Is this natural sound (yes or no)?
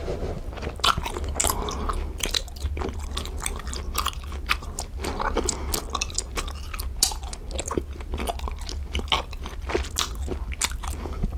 yes